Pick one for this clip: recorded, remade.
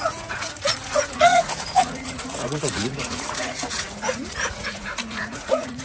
remade